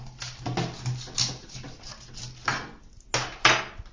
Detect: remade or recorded recorded